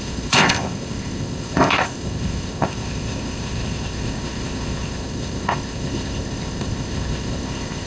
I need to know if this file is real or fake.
fake